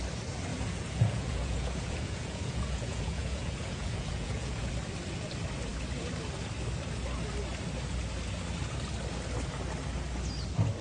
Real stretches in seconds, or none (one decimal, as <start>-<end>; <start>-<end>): 0.0-0.5; 4.7-10.8